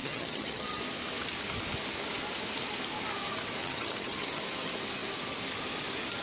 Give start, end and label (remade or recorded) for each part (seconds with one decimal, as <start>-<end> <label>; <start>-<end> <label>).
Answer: 0.0-0.8 remade; 0.8-3.6 recorded; 3.6-4.4 remade; 4.4-6.2 recorded